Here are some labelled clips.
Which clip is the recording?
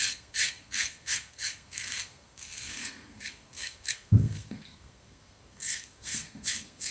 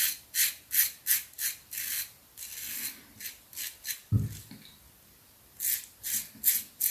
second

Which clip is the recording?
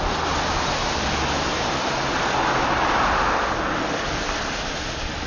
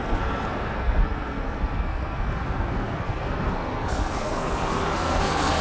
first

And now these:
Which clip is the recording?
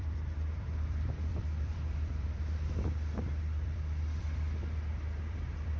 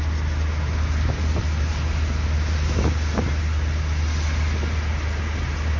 second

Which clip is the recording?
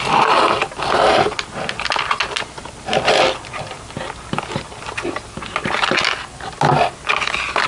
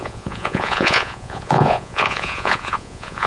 first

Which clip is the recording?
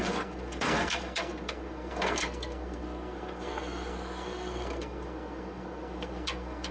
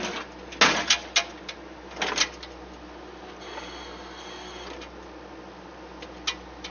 second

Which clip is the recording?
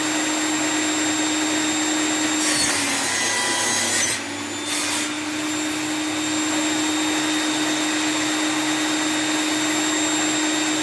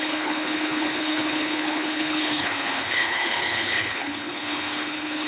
first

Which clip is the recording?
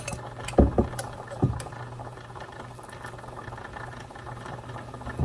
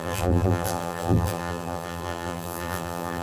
first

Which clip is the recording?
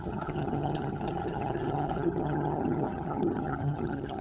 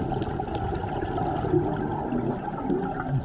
second